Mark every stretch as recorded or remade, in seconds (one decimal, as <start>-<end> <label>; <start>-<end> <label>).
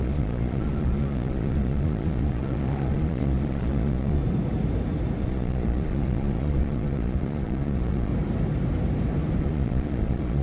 0.0-4.2 remade; 4.2-5.2 recorded; 5.2-8.1 remade; 8.1-9.4 recorded; 9.4-10.4 remade